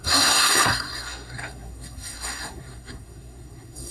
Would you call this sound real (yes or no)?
no